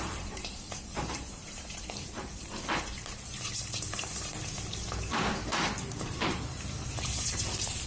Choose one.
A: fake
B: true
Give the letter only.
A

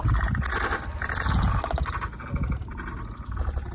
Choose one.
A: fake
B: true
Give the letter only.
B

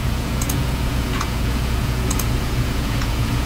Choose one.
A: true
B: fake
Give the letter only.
B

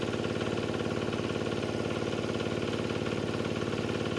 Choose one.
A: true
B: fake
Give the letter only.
A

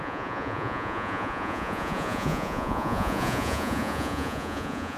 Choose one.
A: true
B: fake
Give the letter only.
B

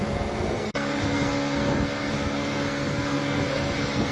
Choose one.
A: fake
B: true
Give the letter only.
A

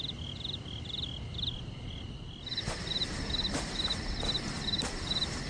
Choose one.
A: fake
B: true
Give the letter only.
B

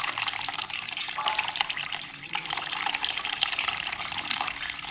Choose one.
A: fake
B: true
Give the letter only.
A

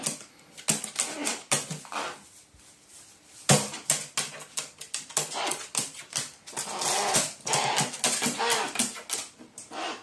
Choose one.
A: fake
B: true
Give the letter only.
B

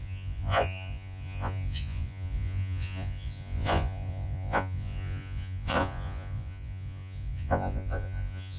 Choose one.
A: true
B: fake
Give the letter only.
B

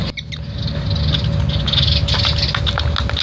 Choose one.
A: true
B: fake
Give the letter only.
A